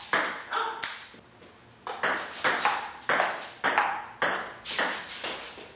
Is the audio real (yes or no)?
yes